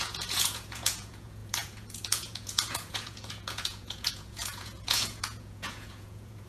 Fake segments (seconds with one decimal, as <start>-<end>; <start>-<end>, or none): 0.0-6.5